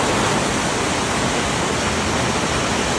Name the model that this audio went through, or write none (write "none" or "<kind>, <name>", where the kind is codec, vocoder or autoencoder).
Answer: none